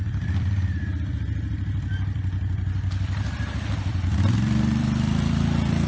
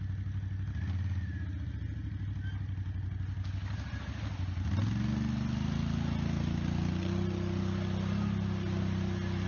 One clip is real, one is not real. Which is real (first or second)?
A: second